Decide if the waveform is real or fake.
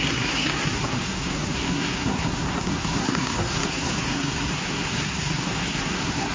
fake